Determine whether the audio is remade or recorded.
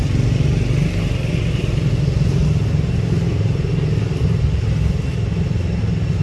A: recorded